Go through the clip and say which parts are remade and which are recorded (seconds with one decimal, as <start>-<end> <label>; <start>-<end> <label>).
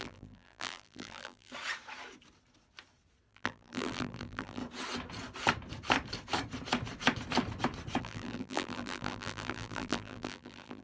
0.0-1.5 remade; 1.5-3.3 recorded; 3.3-4.6 remade; 4.6-8.0 recorded; 8.0-10.8 remade